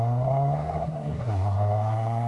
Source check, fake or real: fake